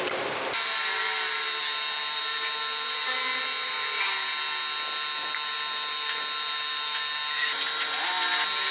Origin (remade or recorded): recorded